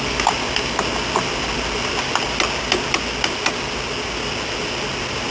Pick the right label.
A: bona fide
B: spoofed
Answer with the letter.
A